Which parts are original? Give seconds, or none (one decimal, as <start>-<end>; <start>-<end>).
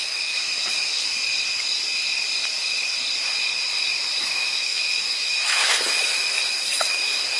1.2-4.2